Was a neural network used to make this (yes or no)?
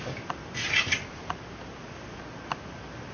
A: no